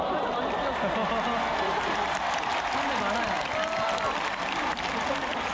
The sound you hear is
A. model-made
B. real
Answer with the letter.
B